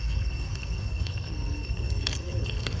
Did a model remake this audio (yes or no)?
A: yes